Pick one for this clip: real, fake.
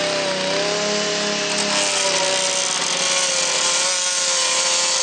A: real